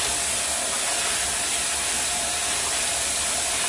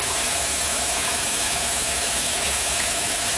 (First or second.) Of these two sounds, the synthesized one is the second